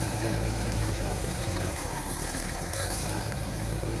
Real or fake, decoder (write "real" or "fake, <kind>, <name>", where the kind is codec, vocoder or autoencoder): fake, codec, SNAC